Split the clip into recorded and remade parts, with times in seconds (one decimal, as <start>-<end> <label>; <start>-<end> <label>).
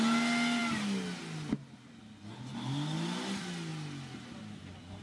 0.0-5.0 recorded